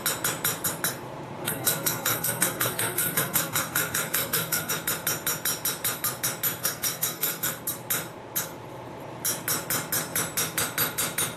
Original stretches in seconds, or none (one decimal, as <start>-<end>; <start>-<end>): 0.0-1.4; 4.7-6.6; 7.6-11.4